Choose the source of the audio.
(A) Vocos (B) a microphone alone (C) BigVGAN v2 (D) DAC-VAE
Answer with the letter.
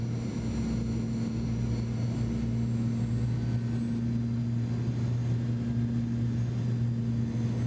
B